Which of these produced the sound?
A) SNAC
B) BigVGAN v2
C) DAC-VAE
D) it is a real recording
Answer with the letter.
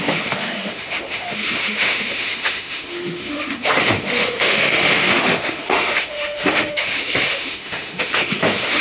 C